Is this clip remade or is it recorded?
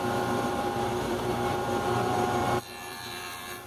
remade